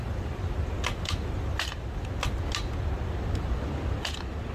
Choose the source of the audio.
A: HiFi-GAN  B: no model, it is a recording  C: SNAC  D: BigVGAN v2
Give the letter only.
B